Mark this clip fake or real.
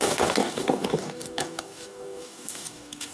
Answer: fake